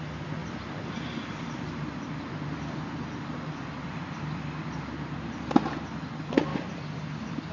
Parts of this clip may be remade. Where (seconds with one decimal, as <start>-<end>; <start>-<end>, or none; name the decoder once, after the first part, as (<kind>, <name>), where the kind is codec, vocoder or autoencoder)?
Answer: 0.4-4.8 (vocoder, BigVGAN v2); 6.5-7.5